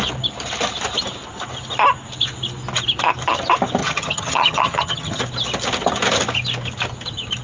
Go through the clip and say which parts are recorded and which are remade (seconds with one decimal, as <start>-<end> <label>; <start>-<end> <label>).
0.0-3.8 recorded; 3.8-5.2 remade; 5.2-7.4 recorded